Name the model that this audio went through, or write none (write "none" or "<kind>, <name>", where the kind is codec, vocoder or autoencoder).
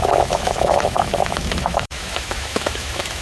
autoencoder, DAC-VAE